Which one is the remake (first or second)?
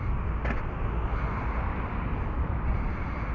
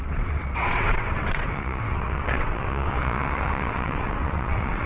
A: second